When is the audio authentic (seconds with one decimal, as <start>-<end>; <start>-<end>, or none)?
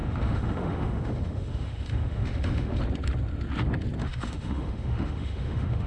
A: 2.8-4.0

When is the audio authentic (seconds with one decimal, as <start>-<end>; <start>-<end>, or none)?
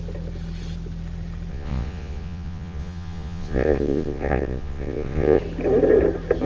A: 0.0-1.5; 5.4-6.5